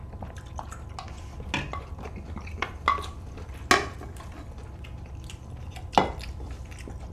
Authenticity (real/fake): real